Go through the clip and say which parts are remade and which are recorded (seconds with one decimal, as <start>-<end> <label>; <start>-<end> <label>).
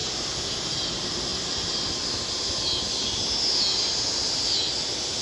0.0-5.2 recorded